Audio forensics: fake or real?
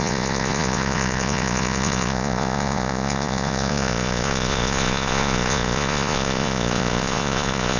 fake